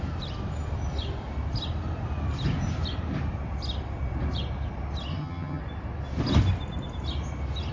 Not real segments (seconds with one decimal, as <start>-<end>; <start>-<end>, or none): 5.1-5.6